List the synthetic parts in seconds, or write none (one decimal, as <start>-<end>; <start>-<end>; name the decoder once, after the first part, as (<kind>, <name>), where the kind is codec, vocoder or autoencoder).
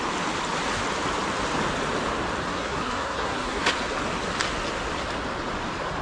2.5-3.7 (codec, SNAC)